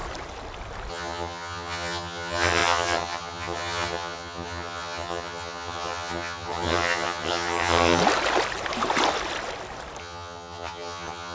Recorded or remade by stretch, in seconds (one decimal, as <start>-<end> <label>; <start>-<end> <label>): 0.0-0.9 recorded; 0.9-8.0 remade; 8.0-10.0 recorded; 10.0-11.3 remade